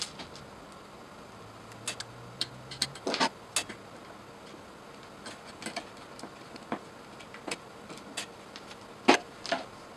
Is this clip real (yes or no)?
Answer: yes